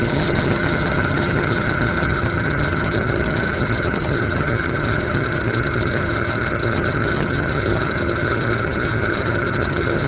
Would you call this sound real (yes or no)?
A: no